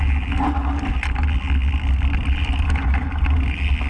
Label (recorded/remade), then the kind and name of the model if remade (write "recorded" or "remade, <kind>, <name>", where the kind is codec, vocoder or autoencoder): recorded